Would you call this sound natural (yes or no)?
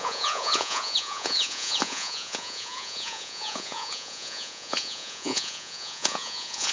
no